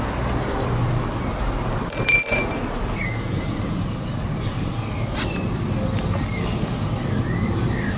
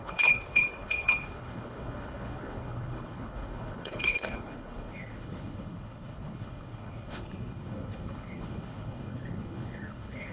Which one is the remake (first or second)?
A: second